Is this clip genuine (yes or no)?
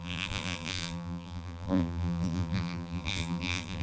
no